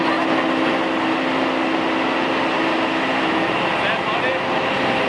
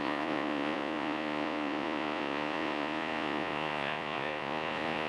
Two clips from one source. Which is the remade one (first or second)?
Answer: second